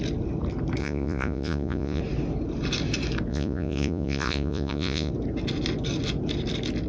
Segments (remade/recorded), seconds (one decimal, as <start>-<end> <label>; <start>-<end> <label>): 0.0-0.8 recorded; 0.8-2.0 remade; 2.0-3.3 recorded; 3.3-5.1 remade; 5.1-6.9 recorded